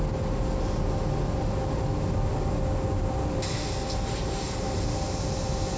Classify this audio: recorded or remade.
recorded